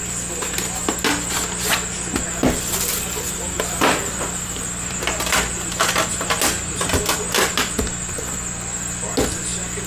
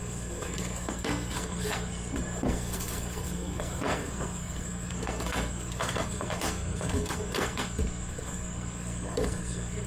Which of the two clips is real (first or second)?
first